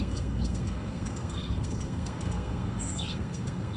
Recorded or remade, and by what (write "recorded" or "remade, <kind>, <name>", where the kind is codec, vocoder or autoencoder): remade, codec, SNAC